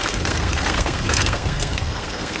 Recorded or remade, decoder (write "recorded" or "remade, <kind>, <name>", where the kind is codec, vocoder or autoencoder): remade, codec, SNAC